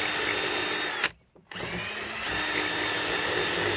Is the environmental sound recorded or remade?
recorded